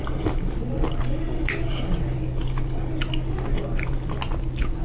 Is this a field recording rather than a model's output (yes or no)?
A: yes